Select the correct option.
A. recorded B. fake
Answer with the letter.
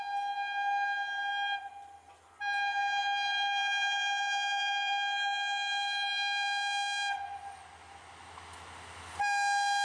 A